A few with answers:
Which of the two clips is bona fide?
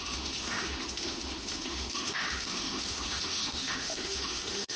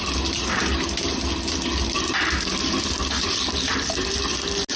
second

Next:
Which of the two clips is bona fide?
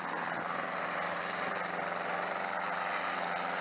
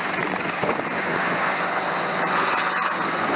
first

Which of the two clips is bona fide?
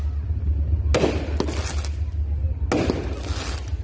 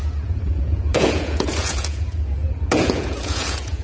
first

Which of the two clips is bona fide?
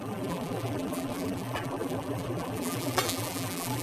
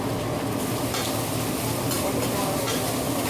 second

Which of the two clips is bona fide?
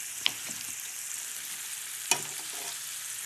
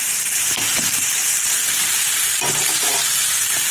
first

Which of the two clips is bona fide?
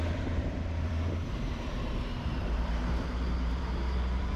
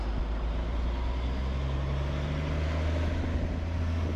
second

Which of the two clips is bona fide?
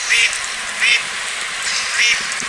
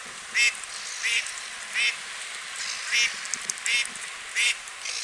second